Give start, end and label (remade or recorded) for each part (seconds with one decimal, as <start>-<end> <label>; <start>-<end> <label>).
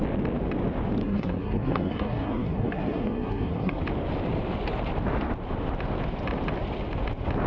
0.0-1.0 recorded; 1.0-3.8 remade; 3.8-7.5 recorded